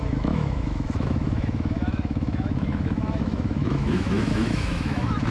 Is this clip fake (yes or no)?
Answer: yes